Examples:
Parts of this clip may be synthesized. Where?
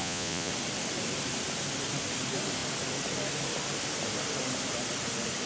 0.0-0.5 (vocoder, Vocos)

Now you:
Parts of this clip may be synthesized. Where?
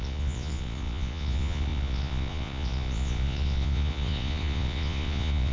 0.0-5.5 (vocoder, Vocos)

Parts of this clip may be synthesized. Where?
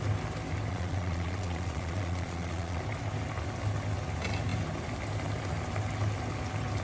0.7-2.8 (vocoder, Vocos)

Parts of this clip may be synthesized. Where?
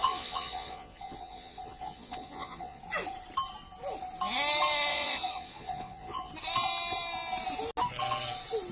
0.0-2.8 (vocoder, Vocos); 4.9-6.3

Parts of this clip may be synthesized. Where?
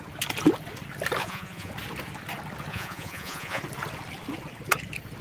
1.2-1.7 (vocoder, Vocos); 2.7-3.6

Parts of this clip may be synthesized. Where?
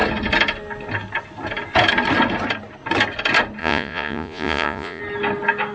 3.6-5.0 (vocoder, Vocos)